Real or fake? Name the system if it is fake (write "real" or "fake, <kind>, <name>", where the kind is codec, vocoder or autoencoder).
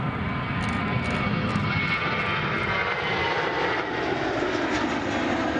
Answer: real